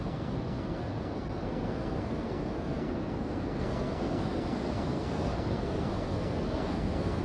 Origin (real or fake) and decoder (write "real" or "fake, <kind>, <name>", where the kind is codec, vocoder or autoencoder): fake, codec, SNAC